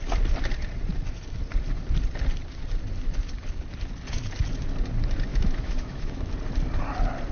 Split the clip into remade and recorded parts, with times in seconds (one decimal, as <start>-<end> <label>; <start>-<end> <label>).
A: 0.0-5.3 recorded; 5.3-6.3 remade; 6.3-7.3 recorded

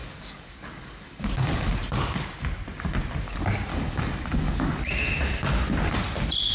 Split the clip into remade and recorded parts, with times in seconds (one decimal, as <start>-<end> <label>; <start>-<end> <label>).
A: 0.0-1.7 remade; 1.7-3.7 recorded; 3.7-4.8 remade; 4.8-6.5 recorded

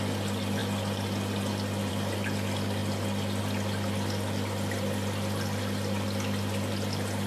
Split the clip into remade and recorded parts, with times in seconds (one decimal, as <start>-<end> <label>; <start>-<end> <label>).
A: 0.0-7.3 recorded

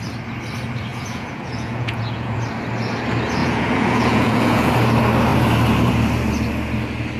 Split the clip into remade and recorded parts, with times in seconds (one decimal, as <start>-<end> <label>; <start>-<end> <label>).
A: 0.0-0.9 recorded; 0.9-2.4 remade; 2.4-3.4 recorded; 3.4-4.7 remade; 4.7-7.2 recorded